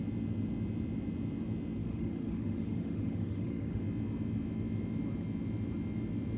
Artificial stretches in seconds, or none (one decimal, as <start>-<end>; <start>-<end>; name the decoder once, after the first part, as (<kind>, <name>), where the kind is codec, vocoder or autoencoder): 1.8-3.8 (autoencoder, DAC-VAE)